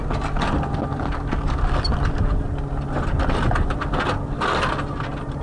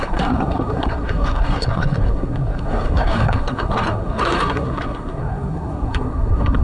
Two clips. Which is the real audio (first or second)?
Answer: first